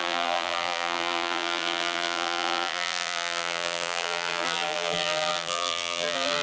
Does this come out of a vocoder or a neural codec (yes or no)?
yes